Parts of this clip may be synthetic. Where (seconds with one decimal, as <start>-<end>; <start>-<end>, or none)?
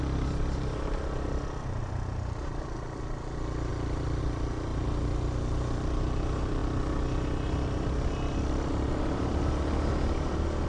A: none